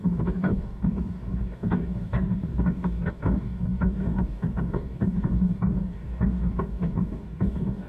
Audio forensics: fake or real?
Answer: fake